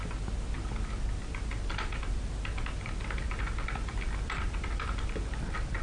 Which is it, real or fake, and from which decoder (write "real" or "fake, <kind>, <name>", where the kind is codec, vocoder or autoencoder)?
real